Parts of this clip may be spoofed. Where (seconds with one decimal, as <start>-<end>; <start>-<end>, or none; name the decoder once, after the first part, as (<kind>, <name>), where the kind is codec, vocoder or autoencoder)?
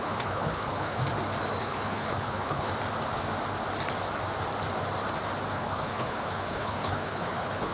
0.0-1.0 (codec, HILCodec); 1.6-2.7; 5.5-7.7